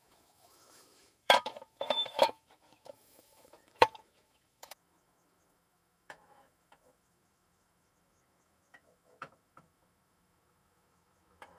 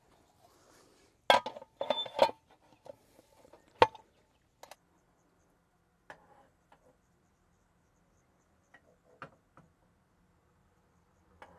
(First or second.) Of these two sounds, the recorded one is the second